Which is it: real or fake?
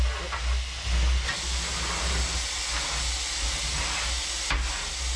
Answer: real